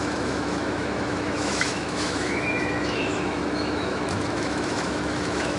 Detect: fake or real fake